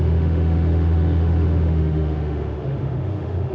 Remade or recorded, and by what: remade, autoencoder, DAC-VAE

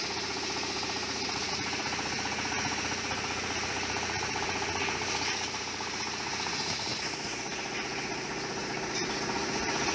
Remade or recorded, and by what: remade, vocoder, Vocos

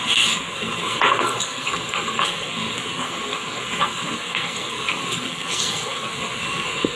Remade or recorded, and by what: remade, codec, SNAC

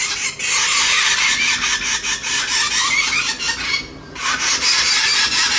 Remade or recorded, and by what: recorded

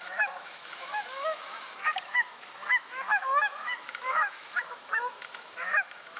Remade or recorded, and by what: remade, autoencoder, DAC-VAE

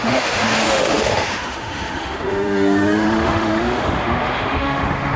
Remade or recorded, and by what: remade, autoencoder, DAC-VAE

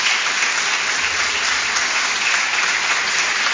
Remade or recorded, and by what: recorded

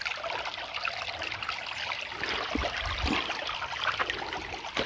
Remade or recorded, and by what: recorded